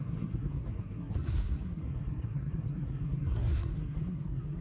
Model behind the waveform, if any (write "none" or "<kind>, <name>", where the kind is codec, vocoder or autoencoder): codec, SNAC